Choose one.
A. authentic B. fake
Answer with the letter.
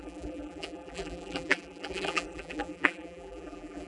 B